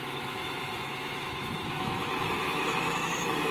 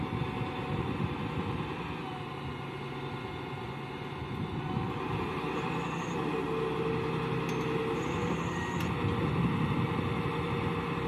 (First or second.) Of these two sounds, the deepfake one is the first